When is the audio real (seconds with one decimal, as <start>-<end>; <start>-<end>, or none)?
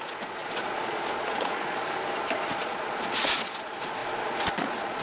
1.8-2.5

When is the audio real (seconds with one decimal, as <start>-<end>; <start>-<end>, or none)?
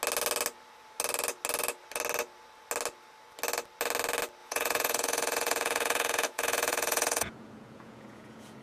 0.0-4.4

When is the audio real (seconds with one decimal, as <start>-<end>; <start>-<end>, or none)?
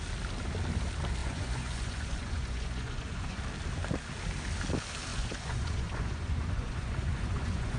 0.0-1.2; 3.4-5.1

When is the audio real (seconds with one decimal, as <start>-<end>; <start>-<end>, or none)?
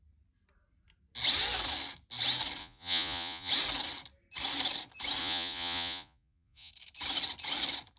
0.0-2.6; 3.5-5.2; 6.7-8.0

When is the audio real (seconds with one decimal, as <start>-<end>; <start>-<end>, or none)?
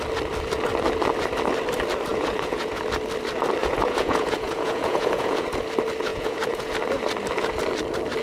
0.0-2.1; 2.8-3.6; 5.5-6.1; 6.7-8.2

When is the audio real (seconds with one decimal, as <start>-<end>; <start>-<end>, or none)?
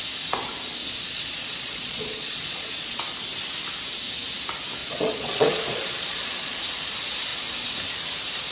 0.0-0.8; 3.0-4.8; 6.6-8.5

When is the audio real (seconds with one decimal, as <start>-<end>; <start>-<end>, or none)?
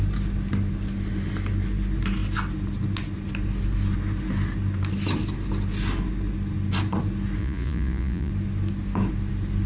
0.0-7.4; 8.3-9.7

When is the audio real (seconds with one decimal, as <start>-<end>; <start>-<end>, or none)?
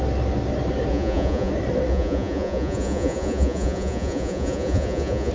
0.0-0.9; 1.5-1.9